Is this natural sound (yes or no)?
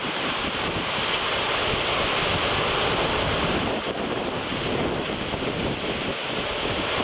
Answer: yes